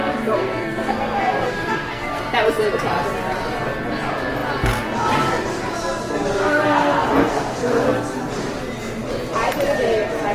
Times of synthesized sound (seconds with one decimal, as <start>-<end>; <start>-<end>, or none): 0.0-2.2; 6.4-8.2